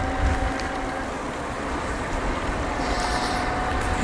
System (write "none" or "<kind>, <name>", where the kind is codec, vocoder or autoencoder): none